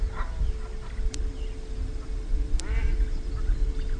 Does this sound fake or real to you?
real